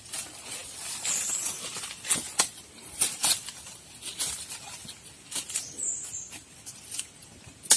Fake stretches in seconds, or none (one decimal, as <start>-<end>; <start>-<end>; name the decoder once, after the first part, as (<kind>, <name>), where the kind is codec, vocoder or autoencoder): none